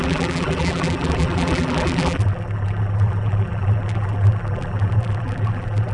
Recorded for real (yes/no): no